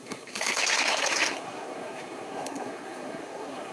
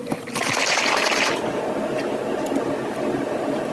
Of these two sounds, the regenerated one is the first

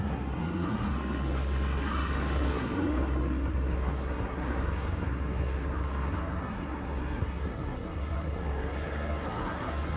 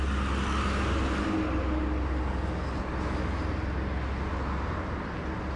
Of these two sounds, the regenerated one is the first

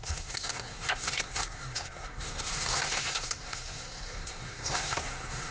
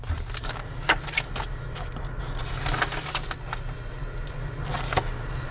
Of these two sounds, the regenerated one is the first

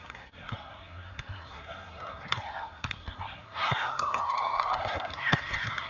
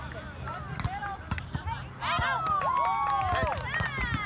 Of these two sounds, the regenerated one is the first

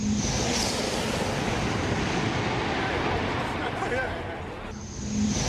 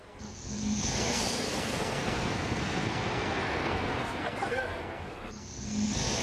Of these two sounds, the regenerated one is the second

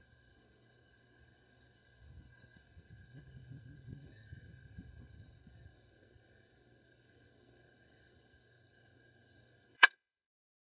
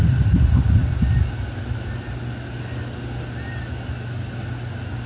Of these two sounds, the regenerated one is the first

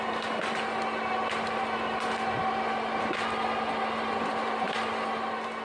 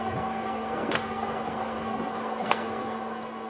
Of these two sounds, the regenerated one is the second